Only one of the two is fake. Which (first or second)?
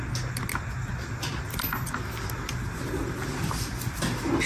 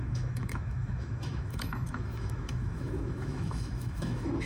second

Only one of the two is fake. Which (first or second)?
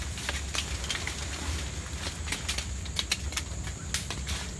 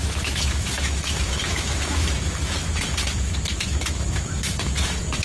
second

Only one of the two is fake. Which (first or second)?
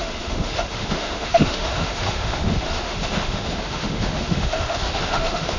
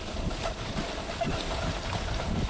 first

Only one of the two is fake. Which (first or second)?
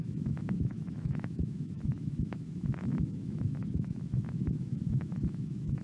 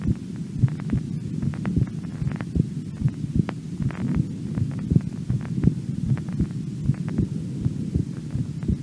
first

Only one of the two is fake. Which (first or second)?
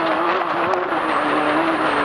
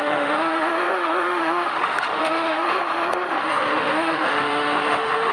second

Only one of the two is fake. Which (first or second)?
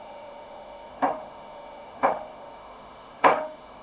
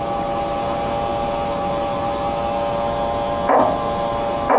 first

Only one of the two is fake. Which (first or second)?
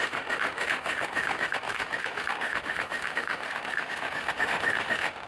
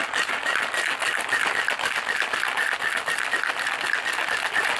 first